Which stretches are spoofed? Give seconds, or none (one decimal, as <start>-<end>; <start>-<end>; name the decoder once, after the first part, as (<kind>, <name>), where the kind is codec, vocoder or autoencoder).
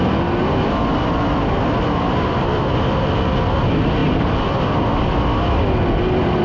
none